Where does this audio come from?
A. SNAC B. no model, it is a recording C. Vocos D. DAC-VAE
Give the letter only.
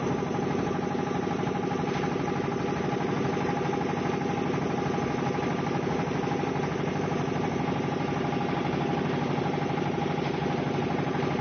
B